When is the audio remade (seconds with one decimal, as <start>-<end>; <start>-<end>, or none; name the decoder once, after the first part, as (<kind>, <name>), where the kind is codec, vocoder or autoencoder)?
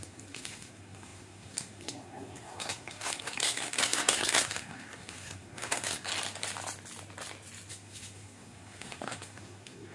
0.0-6.1 (codec, SNAC); 7.7-9.9